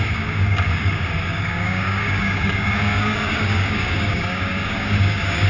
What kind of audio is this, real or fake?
fake